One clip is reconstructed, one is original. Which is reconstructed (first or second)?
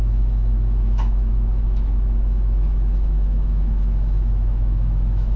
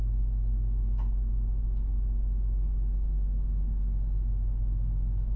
first